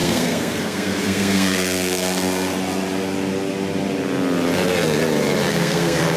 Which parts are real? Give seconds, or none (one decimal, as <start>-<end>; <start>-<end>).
2.5-5.5